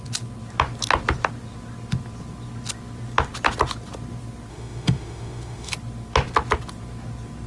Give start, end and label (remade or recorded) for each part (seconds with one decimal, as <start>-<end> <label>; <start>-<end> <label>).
0.0-4.5 recorded; 4.5-5.7 remade; 5.7-7.5 recorded